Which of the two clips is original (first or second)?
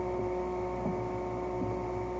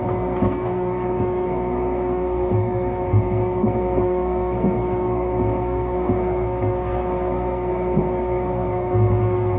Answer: first